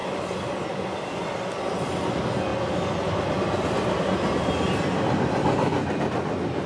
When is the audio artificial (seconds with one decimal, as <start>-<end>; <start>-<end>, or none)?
none